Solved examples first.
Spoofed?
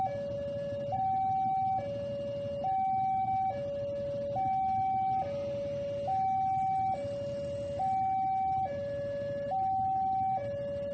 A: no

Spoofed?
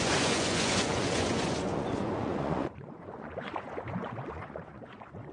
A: yes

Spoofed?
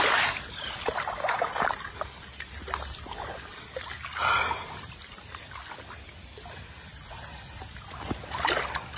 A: no